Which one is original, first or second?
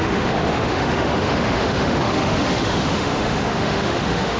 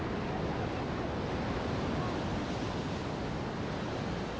second